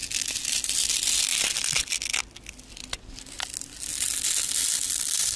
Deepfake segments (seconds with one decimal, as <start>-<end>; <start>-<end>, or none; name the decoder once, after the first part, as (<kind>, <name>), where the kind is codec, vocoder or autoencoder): none